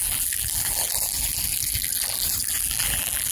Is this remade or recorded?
remade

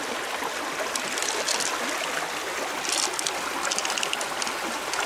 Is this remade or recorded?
recorded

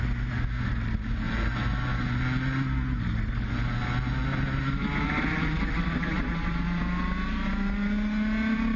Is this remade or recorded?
recorded